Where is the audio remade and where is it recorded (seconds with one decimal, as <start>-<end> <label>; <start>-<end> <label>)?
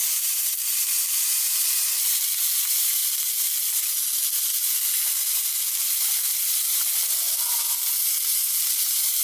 0.0-0.8 recorded; 0.8-3.0 remade; 3.0-8.0 recorded; 8.0-9.2 remade